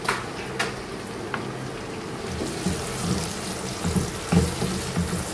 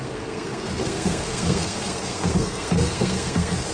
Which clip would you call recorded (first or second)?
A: first